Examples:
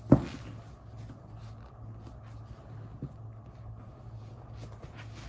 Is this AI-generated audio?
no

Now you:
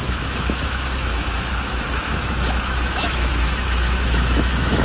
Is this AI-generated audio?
yes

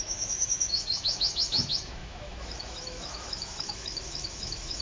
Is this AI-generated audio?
yes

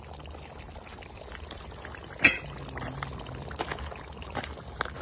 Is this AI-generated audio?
no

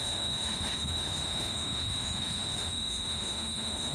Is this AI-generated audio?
yes